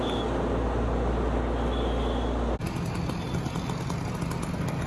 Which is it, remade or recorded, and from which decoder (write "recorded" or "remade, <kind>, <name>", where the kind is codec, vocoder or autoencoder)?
recorded